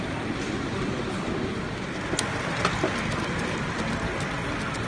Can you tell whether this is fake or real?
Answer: real